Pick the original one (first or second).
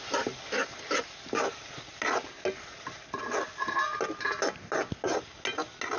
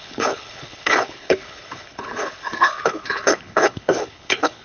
first